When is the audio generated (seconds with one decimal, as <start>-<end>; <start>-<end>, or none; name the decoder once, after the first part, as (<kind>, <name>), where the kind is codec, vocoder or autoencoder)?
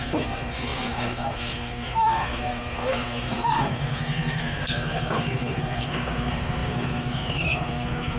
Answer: 0.0-8.2 (codec, SNAC)